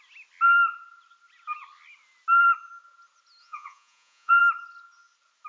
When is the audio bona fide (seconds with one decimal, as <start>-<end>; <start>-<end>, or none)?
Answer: 0.0-3.4; 4.4-5.5